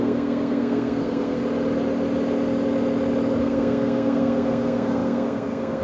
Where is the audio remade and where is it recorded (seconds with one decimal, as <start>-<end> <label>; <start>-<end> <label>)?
0.0-1.4 remade; 1.4-3.4 recorded; 3.4-5.8 remade